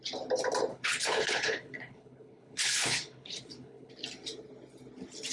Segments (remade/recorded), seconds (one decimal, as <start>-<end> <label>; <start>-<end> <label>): 0.0-0.7 recorded; 0.7-3.9 remade; 3.9-5.3 recorded